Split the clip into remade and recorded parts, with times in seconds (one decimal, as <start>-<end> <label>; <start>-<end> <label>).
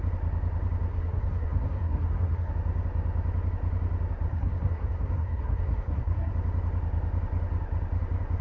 0.0-0.9 recorded; 0.9-2.5 remade; 2.5-4.3 recorded; 4.3-6.3 remade; 6.3-8.4 recorded